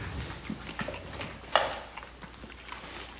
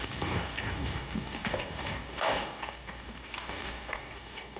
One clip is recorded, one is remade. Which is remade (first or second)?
second